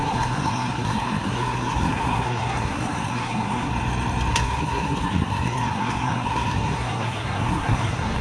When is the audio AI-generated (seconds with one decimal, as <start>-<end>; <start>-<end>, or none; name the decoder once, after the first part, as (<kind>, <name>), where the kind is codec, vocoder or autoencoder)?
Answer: 0.0-3.7 (codec, SNAC); 4.3-8.2